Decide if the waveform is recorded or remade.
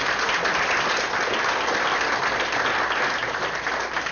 recorded